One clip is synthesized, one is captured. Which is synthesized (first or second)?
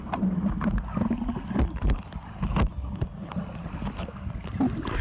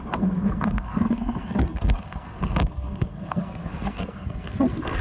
second